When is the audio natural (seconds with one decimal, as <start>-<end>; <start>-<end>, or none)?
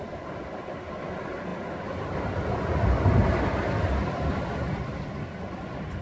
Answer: 0.0-6.0